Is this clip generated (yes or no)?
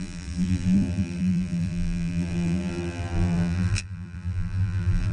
yes